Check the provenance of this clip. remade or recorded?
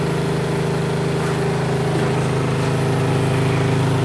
recorded